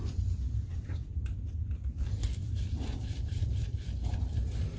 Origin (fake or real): fake